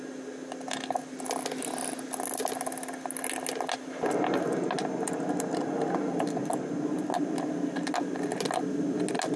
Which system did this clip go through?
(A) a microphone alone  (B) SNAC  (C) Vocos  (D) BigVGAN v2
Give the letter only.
A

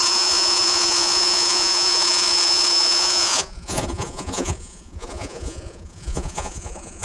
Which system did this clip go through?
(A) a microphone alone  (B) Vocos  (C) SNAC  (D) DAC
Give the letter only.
B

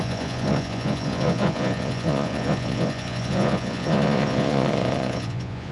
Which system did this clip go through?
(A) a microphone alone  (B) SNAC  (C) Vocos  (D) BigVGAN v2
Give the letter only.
C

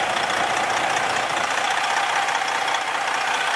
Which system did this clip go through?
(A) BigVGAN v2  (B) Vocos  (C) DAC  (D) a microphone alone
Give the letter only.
D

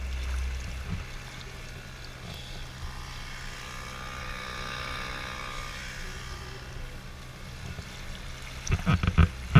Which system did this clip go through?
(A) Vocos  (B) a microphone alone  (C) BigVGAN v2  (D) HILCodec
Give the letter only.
B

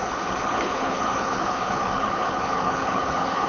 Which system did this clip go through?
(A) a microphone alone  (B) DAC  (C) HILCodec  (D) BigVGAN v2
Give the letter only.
C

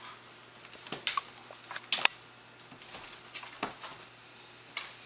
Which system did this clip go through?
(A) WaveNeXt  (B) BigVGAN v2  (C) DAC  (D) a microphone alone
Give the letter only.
D